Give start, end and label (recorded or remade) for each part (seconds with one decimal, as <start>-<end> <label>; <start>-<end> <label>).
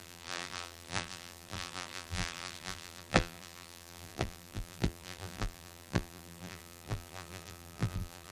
0.0-8.3 remade